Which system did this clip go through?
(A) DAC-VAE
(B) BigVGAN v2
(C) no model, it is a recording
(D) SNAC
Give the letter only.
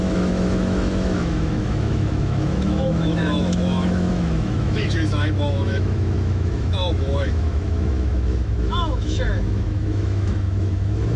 A